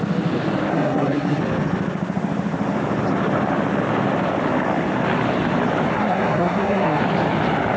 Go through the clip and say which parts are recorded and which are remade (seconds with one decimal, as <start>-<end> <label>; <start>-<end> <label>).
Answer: 0.0-0.7 recorded; 0.7-1.4 remade; 1.4-5.9 recorded; 5.9-7.0 remade; 7.0-7.8 recorded